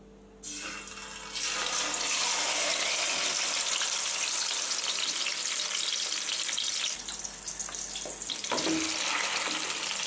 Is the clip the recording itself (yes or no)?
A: yes